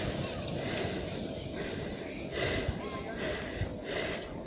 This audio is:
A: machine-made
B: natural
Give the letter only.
B